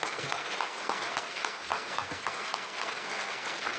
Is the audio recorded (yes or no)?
no